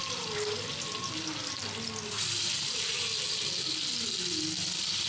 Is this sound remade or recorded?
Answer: recorded